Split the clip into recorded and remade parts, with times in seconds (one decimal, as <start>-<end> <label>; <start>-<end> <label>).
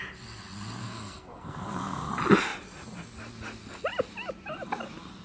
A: 0.0-0.8 recorded; 0.8-2.1 remade; 2.1-5.2 recorded